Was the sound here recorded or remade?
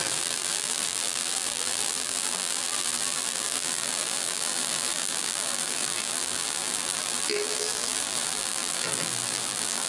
remade